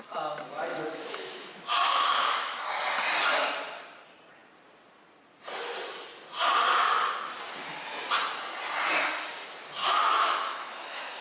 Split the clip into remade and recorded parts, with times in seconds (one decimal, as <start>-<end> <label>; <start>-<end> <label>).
0.0-0.7 recorded; 0.7-2.7 remade; 2.7-9.8 recorded; 9.8-11.2 remade